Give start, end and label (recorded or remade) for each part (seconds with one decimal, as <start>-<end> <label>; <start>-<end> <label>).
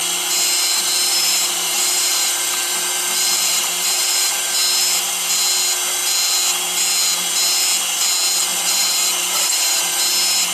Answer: 0.0-1.1 recorded; 1.1-4.5 remade; 4.5-8.5 recorded; 8.5-9.9 remade; 9.9-10.5 recorded